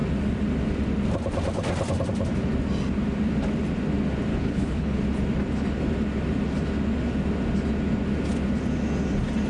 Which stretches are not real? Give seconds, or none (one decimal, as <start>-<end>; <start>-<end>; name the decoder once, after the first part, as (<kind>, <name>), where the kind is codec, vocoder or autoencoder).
4.3-5.0 (codec, HILCodec)